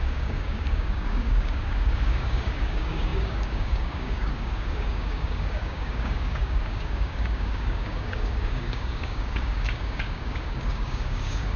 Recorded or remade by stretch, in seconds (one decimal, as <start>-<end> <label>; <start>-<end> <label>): 0.0-11.6 remade